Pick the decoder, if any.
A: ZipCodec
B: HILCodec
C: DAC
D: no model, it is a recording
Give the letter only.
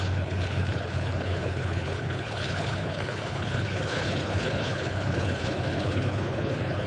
B